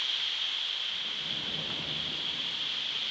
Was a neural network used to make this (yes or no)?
no